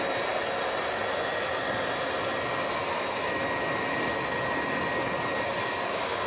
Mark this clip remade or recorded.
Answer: recorded